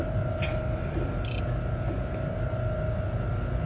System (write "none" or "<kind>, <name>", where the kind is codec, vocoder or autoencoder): none